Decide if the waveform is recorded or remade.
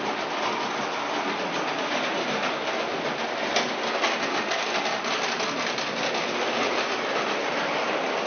recorded